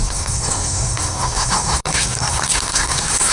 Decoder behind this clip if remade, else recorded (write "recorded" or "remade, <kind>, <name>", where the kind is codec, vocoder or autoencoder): remade, codec, SNAC